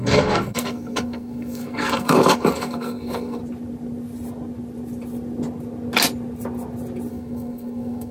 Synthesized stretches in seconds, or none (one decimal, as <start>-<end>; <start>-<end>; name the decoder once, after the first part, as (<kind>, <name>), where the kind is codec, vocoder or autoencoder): 0.0-3.4 (codec, SNAC); 7.1-8.1